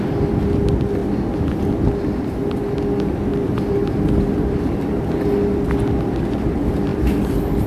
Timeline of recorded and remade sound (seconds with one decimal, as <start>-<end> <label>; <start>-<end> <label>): 0.0-3.3 recorded; 3.3-5.0 remade; 5.0-6.9 recorded; 6.9-7.7 remade